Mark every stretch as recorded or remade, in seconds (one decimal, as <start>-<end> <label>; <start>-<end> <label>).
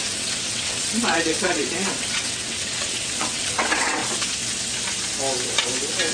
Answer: 0.0-4.0 remade; 4.0-6.1 recorded